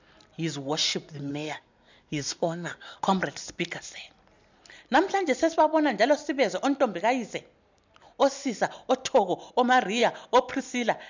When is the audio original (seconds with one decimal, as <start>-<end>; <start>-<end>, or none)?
0.0-1.3; 3.0-11.1